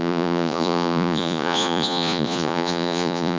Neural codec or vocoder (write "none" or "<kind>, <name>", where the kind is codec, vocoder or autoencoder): vocoder, Vocos